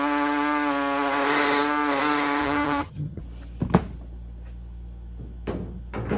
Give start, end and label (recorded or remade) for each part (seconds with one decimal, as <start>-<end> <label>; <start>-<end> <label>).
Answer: 0.0-2.4 recorded; 2.4-3.2 remade; 3.2-6.2 recorded